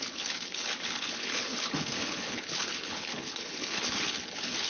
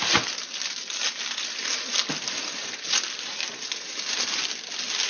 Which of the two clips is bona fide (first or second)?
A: second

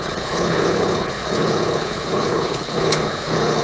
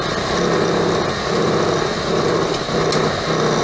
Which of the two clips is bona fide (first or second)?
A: second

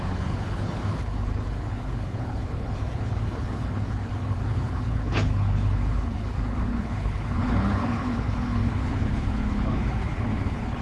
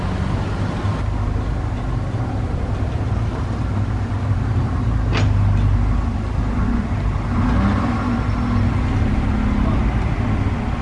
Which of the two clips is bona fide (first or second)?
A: second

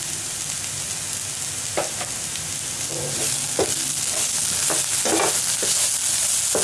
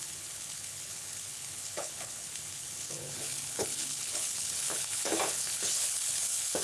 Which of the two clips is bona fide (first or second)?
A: first